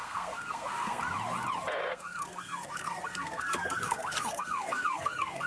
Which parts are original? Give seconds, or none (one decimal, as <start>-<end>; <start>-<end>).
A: 1.0-1.9